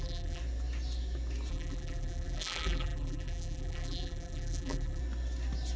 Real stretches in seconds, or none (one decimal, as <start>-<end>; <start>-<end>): 0.4-1.5; 5.0-5.8